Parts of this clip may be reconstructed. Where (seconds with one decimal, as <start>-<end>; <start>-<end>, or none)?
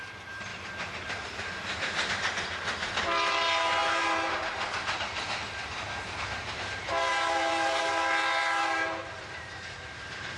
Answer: 0.0-10.4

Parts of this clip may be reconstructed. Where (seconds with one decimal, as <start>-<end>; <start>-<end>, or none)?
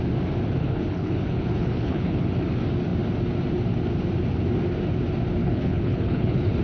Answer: 0.6-2.3; 5.4-6.6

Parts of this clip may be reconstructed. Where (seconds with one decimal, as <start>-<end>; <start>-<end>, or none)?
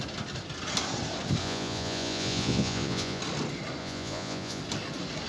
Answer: 1.4-3.2; 3.8-4.6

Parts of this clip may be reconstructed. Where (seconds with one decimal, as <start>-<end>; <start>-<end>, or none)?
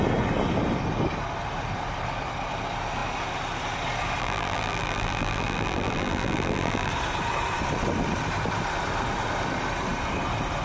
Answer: 4.2-6.9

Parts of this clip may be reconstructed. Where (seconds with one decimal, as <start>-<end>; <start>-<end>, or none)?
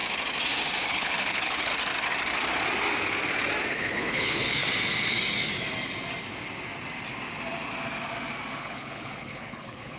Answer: 0.9-1.7; 3.7-4.6; 8.6-10.0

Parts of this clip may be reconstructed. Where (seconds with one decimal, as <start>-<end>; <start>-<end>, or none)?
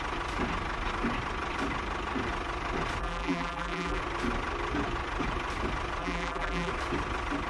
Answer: 3.0-4.0; 6.0-6.7